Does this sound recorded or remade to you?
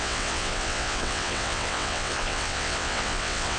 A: remade